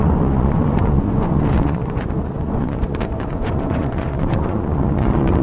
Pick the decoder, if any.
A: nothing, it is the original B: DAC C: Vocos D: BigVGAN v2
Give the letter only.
C